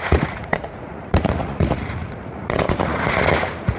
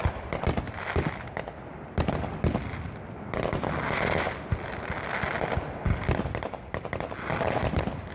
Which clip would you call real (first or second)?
second